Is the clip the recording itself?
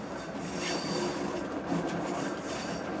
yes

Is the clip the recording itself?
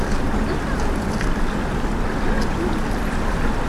yes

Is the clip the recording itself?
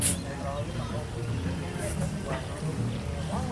yes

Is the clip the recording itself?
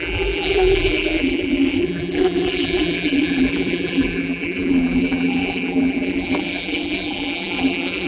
no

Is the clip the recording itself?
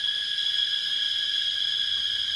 yes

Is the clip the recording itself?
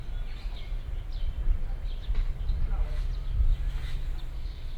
yes